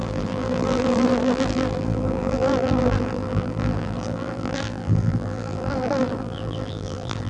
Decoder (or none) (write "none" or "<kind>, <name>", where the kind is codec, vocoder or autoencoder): vocoder, BigVGAN v2